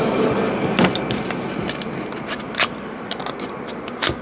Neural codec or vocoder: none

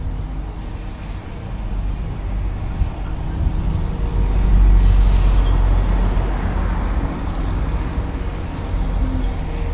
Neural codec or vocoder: none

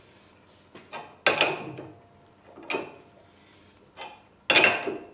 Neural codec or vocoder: none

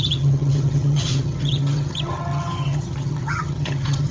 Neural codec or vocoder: vocoder, HiFi-GAN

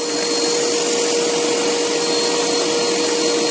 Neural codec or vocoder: none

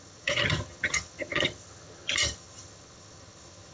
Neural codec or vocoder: vocoder, HiFi-GAN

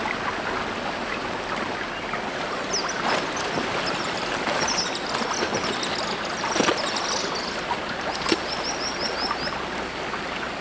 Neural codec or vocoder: none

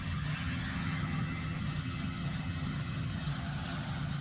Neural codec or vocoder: vocoder, HiFi-GAN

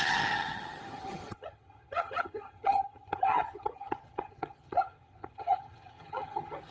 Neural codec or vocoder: vocoder, HiFi-GAN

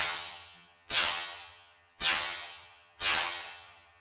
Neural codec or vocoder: vocoder, HiFi-GAN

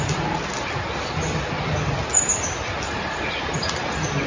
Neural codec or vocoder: none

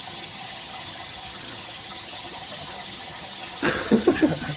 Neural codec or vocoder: vocoder, HiFi-GAN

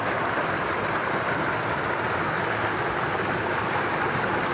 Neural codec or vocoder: none